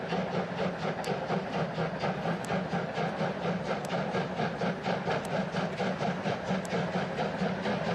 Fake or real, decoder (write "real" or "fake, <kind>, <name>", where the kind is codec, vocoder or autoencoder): real